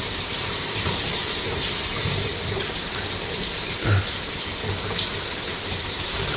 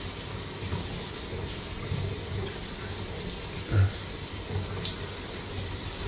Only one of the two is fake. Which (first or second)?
first